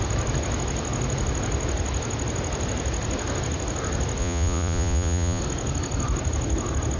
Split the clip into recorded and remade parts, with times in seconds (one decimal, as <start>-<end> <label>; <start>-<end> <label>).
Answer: 0.0-4.2 recorded; 4.2-5.4 remade; 5.4-7.0 recorded